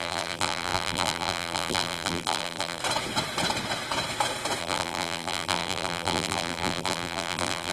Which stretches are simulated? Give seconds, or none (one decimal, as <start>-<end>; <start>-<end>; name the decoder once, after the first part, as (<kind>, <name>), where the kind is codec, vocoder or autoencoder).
0.0-2.8 (vocoder, BigVGAN v2); 4.6-7.7